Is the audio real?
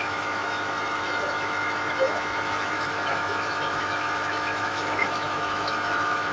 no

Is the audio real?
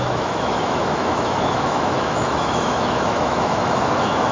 no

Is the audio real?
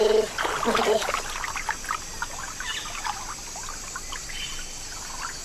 yes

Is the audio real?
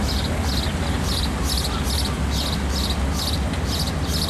yes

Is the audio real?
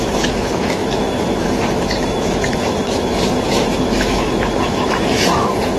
no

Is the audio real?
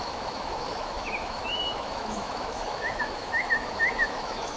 no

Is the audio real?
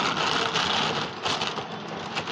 yes